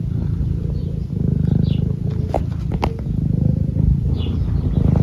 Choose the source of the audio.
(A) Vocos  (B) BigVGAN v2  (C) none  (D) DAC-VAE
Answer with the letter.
C